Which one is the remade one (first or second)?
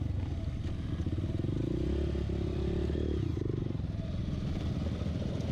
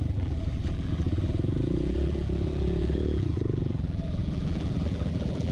second